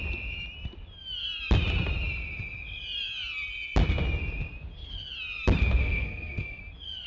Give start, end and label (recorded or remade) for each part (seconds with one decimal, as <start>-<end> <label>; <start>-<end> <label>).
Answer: 0.0-5.8 recorded; 5.8-6.6 remade; 6.6-7.1 recorded